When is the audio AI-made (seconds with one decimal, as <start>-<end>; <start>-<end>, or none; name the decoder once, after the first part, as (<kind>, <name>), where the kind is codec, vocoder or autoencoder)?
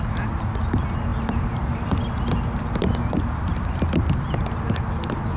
none